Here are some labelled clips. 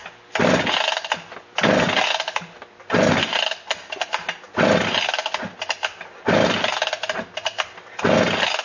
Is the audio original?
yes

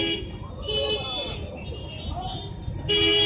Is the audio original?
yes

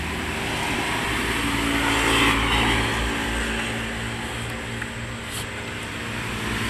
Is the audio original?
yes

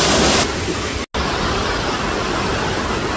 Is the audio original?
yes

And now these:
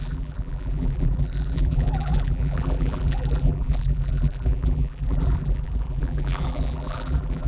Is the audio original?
no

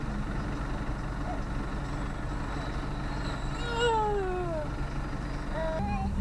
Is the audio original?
yes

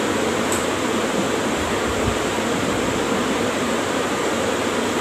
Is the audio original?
yes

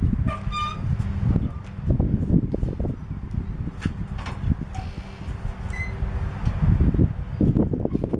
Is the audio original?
yes